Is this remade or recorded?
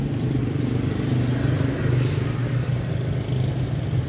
recorded